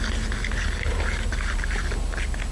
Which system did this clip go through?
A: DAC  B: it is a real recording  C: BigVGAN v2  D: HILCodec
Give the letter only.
B